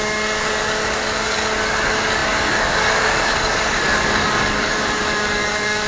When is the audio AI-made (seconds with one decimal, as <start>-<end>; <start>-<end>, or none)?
0.0-5.9